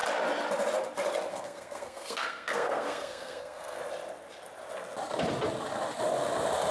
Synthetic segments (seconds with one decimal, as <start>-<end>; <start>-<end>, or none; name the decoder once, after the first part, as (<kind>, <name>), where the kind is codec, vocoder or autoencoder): 1.3-3.8 (codec, SNAC)